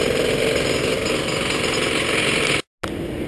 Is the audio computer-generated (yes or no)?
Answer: no